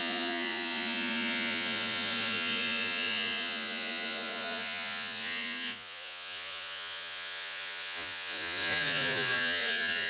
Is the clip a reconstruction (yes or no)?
yes